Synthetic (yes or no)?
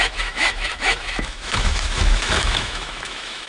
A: yes